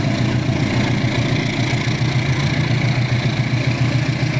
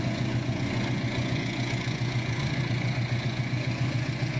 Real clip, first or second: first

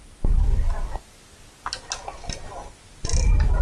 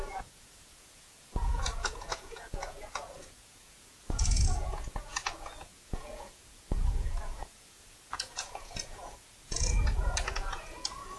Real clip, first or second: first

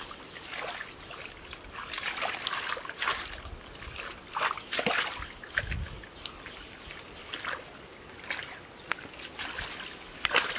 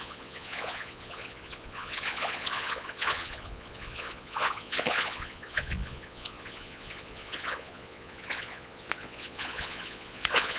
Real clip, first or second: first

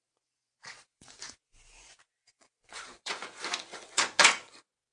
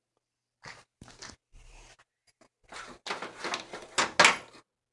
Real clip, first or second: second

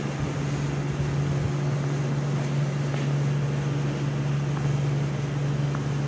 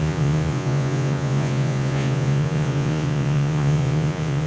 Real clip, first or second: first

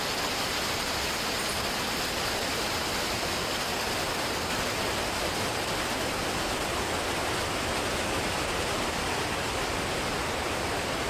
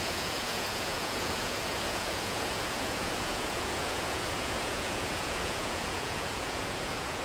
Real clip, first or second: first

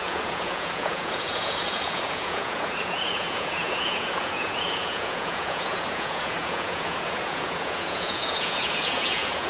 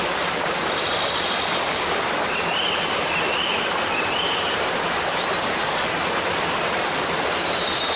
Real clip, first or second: second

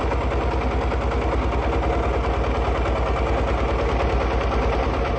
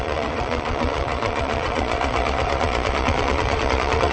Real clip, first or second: first